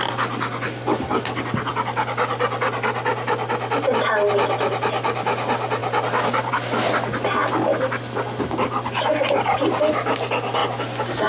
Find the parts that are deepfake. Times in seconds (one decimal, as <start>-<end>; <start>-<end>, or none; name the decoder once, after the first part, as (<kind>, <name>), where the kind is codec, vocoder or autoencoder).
none